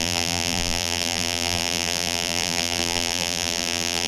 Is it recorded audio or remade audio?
remade